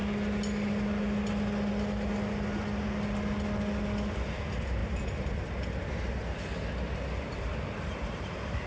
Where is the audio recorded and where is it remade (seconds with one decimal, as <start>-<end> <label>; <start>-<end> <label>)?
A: 0.0-7.5 recorded; 7.5-8.7 remade